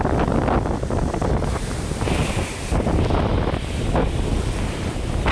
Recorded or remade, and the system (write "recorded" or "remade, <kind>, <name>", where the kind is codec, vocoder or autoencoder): recorded